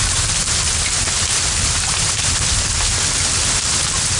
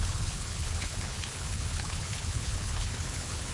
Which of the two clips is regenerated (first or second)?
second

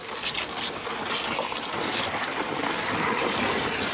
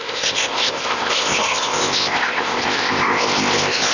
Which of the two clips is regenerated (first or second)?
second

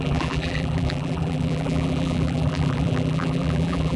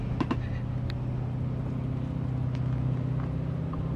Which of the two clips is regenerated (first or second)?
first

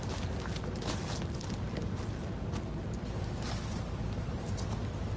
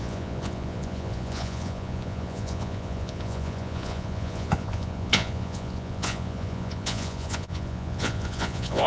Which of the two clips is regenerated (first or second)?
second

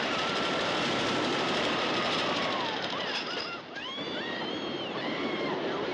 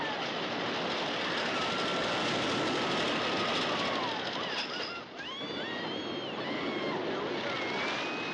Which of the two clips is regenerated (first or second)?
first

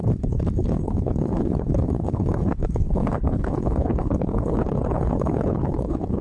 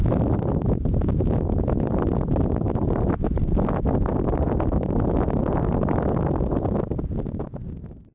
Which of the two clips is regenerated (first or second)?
first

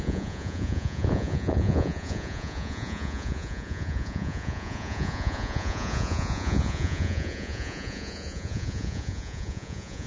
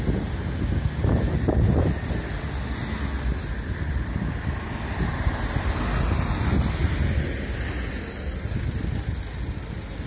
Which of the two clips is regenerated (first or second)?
first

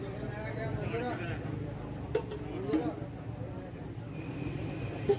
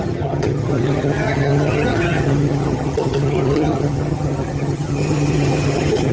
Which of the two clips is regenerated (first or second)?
second